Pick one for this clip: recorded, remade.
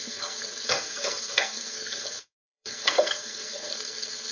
remade